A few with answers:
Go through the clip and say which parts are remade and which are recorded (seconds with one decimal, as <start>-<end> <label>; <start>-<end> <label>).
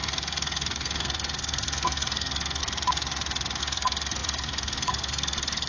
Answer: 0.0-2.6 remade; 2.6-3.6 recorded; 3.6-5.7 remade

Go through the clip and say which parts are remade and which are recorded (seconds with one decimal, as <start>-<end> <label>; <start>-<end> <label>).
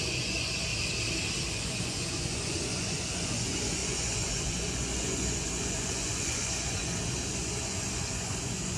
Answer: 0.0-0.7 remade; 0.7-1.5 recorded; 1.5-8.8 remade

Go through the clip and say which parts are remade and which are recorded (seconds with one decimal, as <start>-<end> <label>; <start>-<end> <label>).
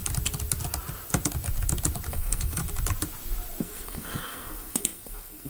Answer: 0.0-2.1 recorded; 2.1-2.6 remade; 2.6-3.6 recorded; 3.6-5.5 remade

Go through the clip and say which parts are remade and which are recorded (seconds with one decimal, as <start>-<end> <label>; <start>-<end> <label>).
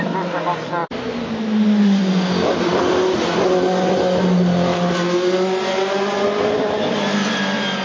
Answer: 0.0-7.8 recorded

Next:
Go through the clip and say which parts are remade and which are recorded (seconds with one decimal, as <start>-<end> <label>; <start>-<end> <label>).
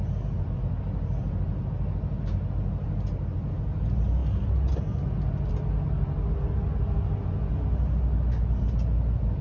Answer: 0.0-9.4 recorded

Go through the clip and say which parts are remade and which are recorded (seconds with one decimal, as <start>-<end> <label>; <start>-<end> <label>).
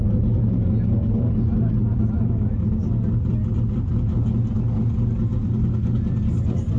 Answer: 0.0-1.9 recorded; 1.9-2.7 remade; 2.7-6.8 recorded